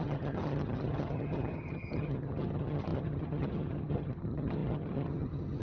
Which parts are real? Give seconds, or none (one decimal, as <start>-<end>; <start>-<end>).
none